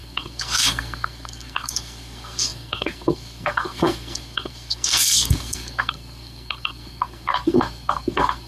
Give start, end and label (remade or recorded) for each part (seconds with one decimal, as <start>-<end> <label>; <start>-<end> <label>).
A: 0.0-8.5 remade

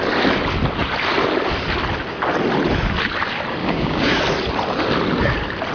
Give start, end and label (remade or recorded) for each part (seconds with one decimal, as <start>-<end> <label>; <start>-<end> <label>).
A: 0.0-3.6 recorded; 3.6-4.2 remade; 4.2-5.7 recorded

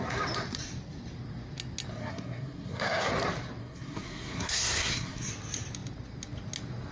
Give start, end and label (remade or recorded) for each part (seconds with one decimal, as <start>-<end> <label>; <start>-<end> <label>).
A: 0.0-2.0 recorded; 2.0-3.1 remade; 3.1-3.6 recorded; 3.6-5.3 remade; 5.3-6.9 recorded